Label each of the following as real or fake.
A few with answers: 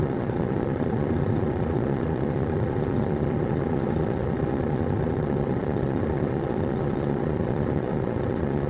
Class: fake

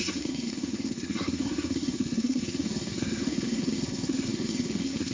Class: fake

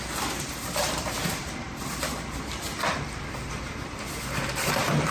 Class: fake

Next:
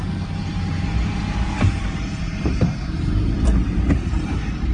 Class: fake